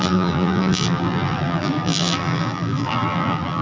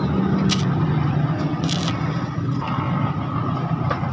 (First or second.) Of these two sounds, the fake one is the first